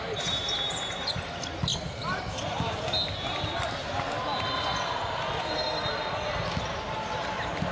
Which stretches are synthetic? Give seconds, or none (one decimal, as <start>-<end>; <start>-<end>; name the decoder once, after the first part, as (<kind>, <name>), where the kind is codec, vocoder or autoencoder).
none